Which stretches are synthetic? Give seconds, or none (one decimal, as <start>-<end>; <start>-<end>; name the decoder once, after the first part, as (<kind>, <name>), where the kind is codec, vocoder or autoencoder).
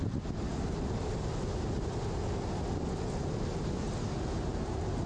none